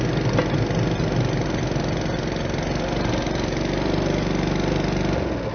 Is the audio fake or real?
real